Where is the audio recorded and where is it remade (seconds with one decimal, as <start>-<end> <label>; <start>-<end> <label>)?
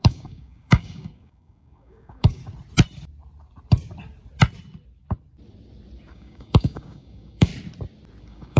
0.0-2.4 remade; 2.4-6.1 recorded; 6.1-7.5 remade; 7.5-8.2 recorded; 8.2-8.6 remade